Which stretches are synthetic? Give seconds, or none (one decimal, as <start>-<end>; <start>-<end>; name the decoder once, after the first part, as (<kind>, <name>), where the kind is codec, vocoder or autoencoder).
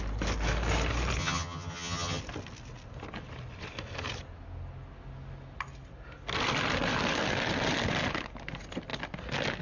1.2-2.2 (vocoder, HiFi-GAN)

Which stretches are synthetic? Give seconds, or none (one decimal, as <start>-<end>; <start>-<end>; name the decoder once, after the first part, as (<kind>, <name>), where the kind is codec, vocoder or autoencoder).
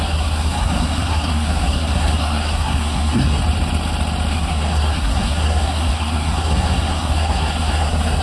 0.0-3.4 (codec, SNAC); 4.3-8.2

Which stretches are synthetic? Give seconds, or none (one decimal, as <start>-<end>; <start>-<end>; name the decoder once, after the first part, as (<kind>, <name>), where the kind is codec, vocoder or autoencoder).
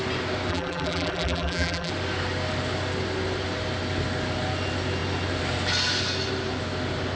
0.5-1.9 (vocoder, BigVGAN v2)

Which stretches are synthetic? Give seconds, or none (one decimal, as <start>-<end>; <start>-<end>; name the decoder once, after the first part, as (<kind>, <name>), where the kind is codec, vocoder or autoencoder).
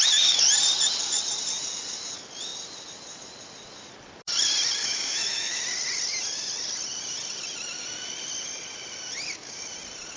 4.8-5.6 (autoencoder, DAC-VAE)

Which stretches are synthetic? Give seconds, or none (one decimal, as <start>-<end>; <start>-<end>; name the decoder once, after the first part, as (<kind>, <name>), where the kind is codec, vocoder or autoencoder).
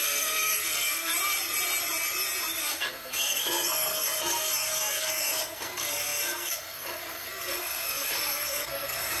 0.0-1.1 (codec, SNAC); 2.6-9.2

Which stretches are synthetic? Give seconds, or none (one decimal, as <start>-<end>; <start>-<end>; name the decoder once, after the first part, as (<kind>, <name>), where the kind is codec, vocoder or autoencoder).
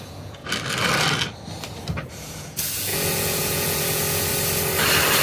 0.0-0.4 (vocoder, Vocos); 2.1-4.3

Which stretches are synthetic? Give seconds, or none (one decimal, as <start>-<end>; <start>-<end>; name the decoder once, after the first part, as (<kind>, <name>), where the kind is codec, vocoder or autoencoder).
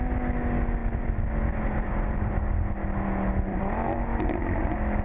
0.8-2.3 (vocoder, BigVGAN v2); 3.5-4.2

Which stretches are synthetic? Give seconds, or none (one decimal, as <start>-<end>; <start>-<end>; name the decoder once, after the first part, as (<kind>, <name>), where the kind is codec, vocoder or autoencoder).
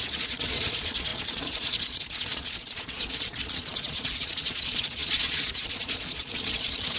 0.0-7.0 (vocoder, Vocos)